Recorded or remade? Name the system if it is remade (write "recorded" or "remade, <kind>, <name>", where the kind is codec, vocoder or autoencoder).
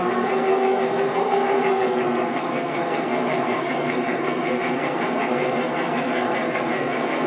remade, codec, SNAC